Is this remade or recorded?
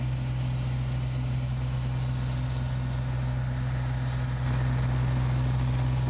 recorded